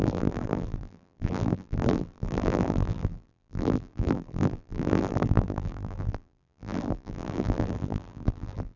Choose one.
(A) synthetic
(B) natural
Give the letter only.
A